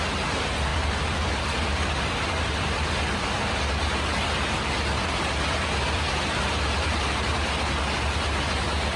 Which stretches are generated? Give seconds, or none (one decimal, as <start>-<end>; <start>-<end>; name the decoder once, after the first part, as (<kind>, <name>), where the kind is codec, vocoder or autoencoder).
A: 0.7-2.9 (vocoder, BigVGAN v2)